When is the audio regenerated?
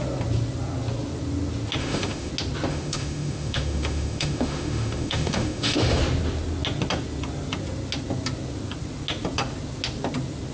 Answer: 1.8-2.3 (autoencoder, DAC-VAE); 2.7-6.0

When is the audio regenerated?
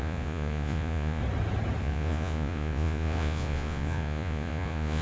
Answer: 0.0-1.2 (vocoder, Vocos); 1.8-5.0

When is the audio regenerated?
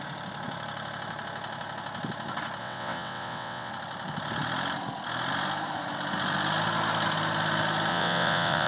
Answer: 2.6-3.7 (vocoder, WaveNeXt); 7.9-8.7